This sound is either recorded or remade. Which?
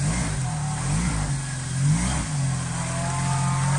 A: recorded